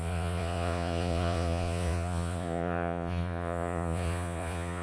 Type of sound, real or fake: fake